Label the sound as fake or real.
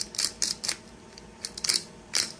fake